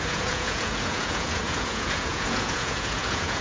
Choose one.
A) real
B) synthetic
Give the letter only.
B